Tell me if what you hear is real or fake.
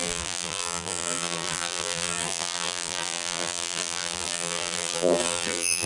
fake